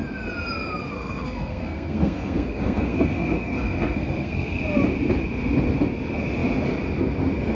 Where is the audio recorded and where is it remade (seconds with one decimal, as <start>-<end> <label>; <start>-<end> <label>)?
0.0-0.9 recorded; 0.9-4.6 remade; 4.6-7.5 recorded